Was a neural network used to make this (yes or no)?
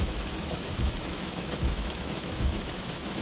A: yes